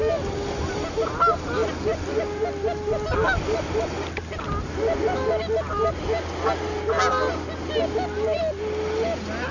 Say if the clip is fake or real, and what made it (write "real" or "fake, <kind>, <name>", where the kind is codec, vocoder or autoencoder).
real